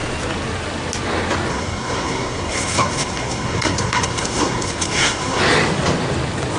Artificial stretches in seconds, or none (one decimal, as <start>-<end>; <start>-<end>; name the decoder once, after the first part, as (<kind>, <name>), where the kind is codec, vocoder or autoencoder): 1.5-5.4 (codec, SNAC)